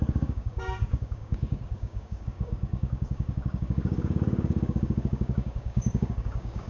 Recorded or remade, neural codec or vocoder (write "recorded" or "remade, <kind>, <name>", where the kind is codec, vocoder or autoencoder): remade, codec, DAC